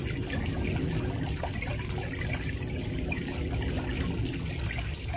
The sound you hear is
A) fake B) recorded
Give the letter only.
B